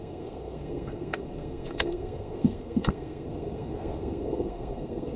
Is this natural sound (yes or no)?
no